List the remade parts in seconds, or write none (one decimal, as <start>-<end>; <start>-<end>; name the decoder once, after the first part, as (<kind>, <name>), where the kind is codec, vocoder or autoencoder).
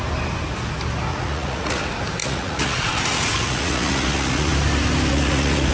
1.1-1.8 (vocoder, Vocos); 2.2-4.5; 5.1-5.7